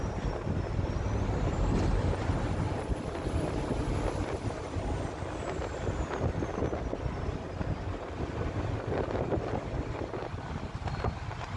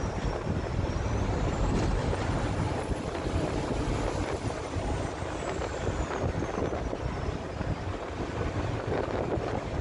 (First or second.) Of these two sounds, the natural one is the first